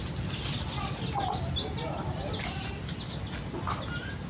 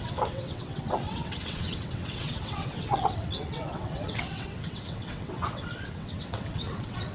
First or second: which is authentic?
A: first